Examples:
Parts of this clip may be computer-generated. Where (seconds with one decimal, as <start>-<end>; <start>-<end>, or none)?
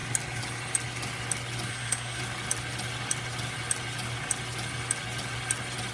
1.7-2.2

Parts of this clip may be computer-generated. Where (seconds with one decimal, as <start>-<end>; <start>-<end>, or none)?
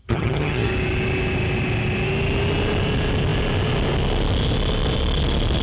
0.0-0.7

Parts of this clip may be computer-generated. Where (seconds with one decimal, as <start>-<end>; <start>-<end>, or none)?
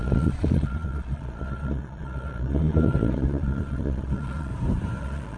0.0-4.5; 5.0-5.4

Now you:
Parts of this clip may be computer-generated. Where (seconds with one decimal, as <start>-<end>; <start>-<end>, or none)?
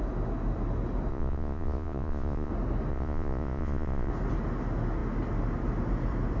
1.1-2.5; 2.9-4.1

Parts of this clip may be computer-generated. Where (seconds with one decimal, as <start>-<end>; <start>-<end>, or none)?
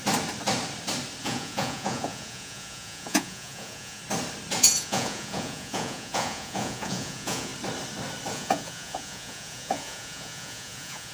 1.2-4.0; 4.6-7.5; 8.3-11.1